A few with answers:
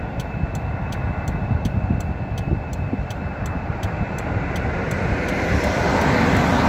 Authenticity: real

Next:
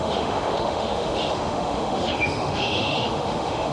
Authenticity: fake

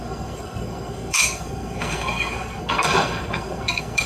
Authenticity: fake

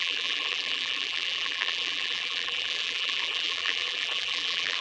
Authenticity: fake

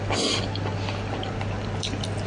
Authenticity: real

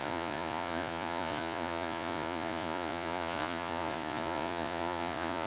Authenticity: fake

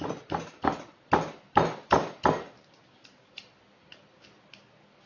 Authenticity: real